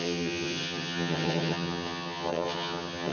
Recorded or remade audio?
remade